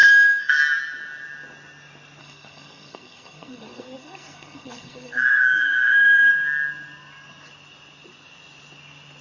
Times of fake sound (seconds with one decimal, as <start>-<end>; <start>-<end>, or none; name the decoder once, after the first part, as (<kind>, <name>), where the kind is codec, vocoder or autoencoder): 0.0-0.6 (codec, SNAC); 2.2-6.3